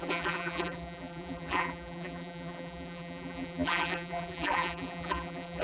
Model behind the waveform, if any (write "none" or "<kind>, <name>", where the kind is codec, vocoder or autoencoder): vocoder, BigVGAN v2